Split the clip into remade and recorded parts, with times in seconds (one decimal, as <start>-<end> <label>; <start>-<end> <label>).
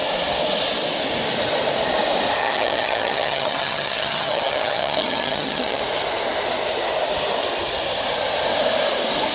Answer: 0.0-2.4 recorded; 2.4-5.8 remade; 5.8-9.3 recorded